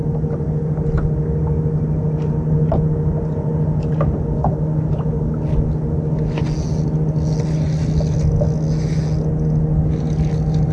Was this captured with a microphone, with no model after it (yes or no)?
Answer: yes